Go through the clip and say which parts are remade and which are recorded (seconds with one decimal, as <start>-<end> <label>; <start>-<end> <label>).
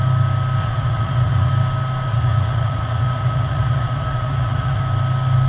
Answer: 0.0-0.6 recorded; 0.6-1.5 remade; 1.5-2.1 recorded; 2.1-4.8 remade; 4.8-5.5 recorded